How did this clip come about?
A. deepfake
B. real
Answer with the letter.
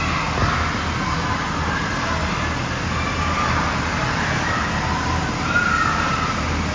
B